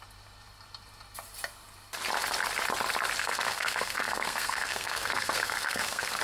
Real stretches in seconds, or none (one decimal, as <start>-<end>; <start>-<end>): 0.0-3.2